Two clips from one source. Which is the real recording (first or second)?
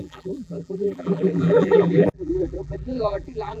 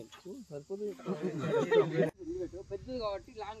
second